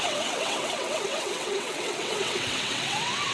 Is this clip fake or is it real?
fake